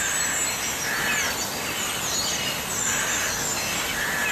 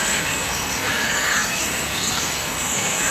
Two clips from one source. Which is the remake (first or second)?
second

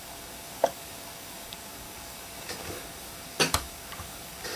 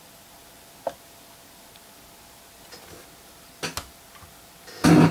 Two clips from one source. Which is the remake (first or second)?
first